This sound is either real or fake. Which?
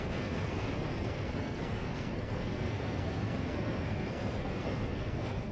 fake